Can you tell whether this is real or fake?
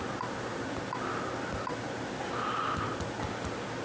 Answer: real